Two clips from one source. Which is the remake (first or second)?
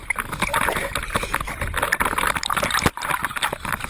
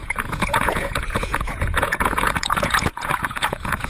second